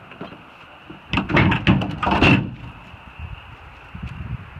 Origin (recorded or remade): recorded